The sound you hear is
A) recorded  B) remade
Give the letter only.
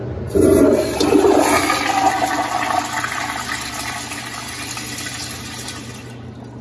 A